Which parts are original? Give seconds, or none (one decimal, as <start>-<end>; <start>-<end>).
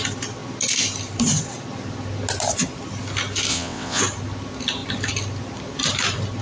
0.0-3.5; 4.0-6.4